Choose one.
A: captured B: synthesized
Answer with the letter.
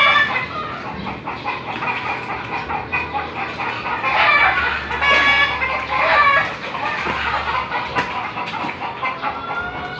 A